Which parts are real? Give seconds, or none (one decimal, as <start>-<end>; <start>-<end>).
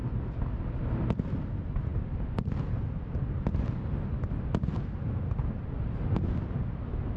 0.0-7.2